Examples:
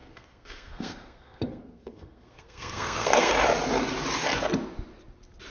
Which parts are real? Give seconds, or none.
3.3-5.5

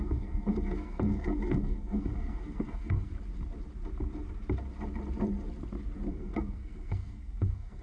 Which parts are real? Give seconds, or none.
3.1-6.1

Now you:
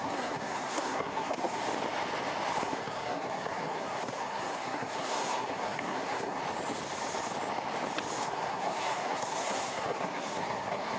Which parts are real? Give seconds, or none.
1.6-2.6; 6.4-8.2